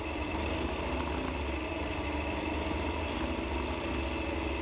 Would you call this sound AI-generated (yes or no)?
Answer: no